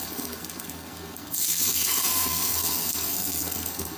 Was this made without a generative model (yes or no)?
no